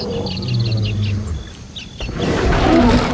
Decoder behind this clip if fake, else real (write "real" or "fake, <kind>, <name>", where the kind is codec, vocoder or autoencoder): real